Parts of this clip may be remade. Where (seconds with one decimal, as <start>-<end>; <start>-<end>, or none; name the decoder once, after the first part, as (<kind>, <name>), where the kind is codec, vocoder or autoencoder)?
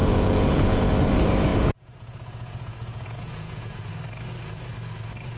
0.0-0.9 (vocoder, Vocos); 1.5-3.9